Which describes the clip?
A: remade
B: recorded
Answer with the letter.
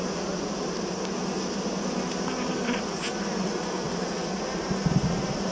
B